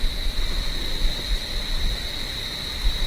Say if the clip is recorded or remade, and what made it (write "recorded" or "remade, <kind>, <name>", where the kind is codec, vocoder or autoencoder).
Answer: recorded